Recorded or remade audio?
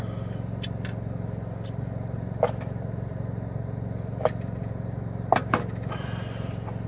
recorded